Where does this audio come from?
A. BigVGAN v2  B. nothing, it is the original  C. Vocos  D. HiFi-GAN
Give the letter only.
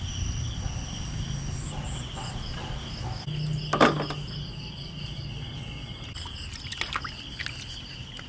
B